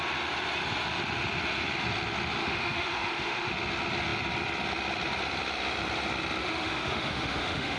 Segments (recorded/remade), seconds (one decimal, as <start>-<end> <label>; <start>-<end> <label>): 0.0-2.4 recorded; 2.4-3.5 remade; 3.5-6.4 recorded; 6.4-7.8 remade